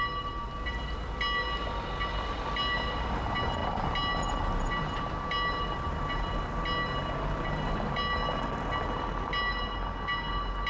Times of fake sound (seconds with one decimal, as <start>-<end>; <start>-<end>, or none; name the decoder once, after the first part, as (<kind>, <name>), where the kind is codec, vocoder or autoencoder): none